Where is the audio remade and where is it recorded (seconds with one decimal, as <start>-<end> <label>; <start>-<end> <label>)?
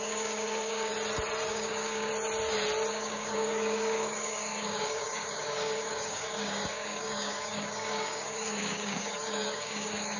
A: 0.0-0.9 remade; 0.9-1.5 recorded; 1.5-2.1 remade; 2.1-2.9 recorded; 2.9-10.2 remade